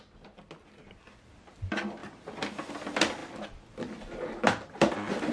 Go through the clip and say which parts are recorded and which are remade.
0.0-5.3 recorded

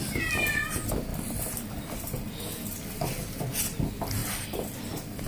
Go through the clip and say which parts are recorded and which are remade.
0.0-5.3 recorded

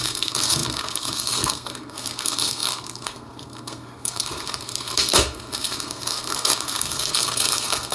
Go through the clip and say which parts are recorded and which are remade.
0.0-7.9 remade

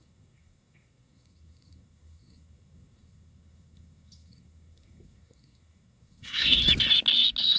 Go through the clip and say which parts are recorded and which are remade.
0.0-6.6 remade; 6.6-7.6 recorded

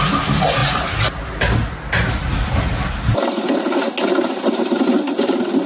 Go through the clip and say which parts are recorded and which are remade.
0.0-5.7 recorded

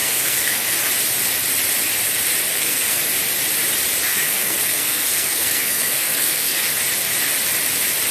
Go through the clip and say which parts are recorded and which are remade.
0.0-0.9 remade; 0.9-2.5 recorded; 2.5-3.0 remade; 3.0-4.1 recorded; 4.1-6.7 remade; 6.7-8.1 recorded

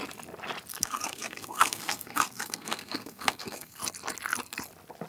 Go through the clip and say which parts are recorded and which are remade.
0.0-0.7 recorded; 0.7-3.8 remade; 3.8-5.1 recorded